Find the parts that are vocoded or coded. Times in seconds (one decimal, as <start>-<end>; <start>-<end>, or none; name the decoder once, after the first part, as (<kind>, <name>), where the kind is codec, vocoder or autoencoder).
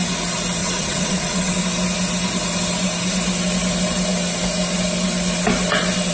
0.6-1.6 (vocoder, WaveNeXt)